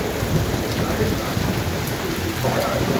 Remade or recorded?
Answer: recorded